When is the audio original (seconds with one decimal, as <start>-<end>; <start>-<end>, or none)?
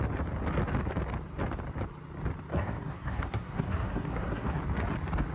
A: 0.0-2.5; 4.6-5.3